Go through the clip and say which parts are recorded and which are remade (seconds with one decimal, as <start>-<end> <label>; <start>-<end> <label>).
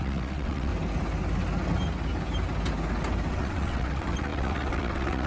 0.0-0.7 remade; 0.7-3.3 recorded; 3.3-5.3 remade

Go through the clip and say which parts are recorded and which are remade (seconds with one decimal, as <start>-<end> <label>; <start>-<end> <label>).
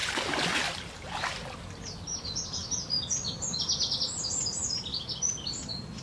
0.0-6.0 recorded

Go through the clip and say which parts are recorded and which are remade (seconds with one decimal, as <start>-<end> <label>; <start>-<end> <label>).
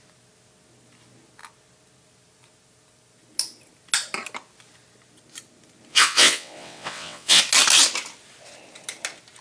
0.0-5.9 recorded; 5.9-7.4 remade; 7.4-9.4 recorded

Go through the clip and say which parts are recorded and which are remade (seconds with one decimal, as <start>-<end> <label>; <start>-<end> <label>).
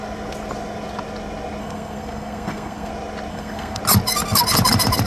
0.0-1.6 recorded; 1.6-2.9 remade; 2.9-3.3 recorded; 3.3-3.8 remade; 3.8-5.1 recorded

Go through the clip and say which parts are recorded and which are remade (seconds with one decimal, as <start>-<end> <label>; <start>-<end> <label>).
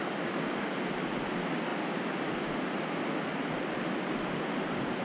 0.0-5.0 recorded